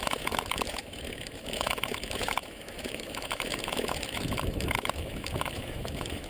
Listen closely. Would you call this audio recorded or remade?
remade